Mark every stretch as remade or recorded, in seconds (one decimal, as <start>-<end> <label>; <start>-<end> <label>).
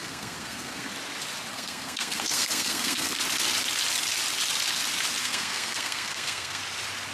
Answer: 0.0-0.9 remade; 0.9-1.5 recorded; 1.5-3.2 remade; 3.2-5.2 recorded; 5.2-6.6 remade; 6.6-7.1 recorded